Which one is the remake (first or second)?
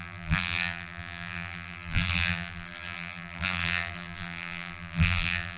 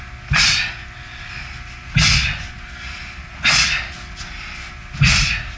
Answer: first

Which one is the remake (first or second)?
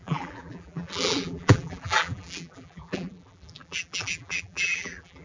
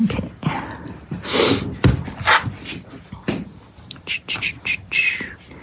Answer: first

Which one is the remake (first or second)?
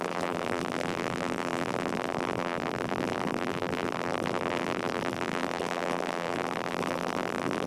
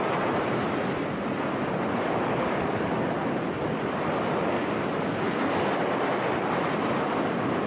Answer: first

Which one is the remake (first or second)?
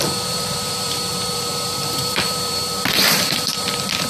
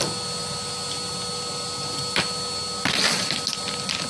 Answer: first